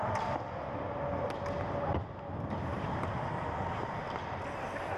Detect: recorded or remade recorded